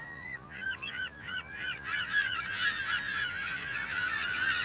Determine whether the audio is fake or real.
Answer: fake